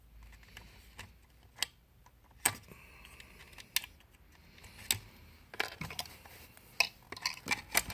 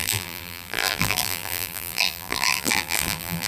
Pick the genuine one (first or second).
first